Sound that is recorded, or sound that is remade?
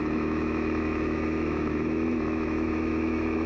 remade